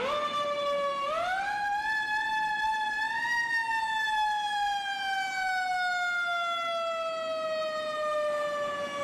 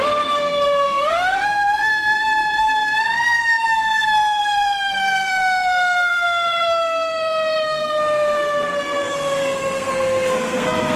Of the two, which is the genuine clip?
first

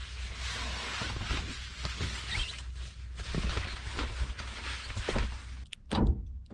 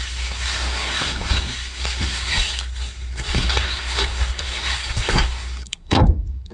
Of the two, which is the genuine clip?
first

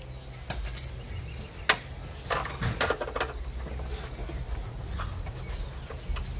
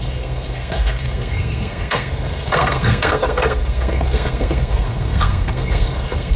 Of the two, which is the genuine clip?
first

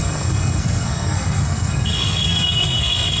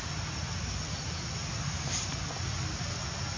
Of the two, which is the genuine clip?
second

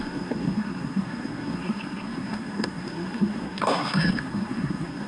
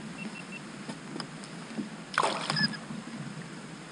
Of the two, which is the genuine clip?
second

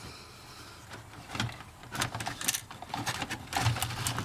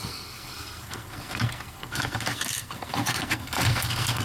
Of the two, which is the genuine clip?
first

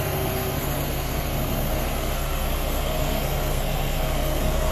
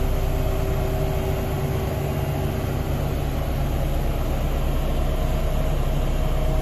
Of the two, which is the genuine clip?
second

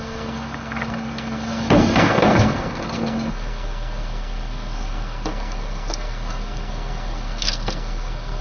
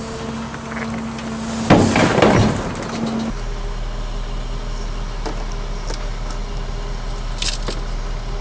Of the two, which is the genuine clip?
second